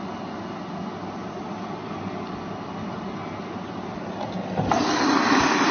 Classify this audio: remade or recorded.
recorded